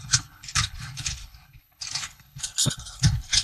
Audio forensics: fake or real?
fake